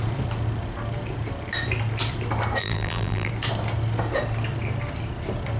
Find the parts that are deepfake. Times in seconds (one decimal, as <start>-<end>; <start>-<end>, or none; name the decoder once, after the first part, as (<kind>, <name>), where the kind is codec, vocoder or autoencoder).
2.6-3.3 (vocoder, BigVGAN v2)